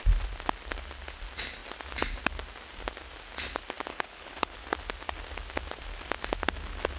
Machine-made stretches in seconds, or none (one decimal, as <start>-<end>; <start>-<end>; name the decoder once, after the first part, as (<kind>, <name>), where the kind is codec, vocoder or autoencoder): 3.9-4.6 (codec, HILCodec)